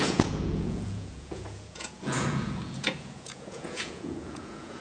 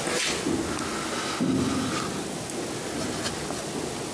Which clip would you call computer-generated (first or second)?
first